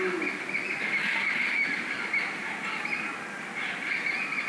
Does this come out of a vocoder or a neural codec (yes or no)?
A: no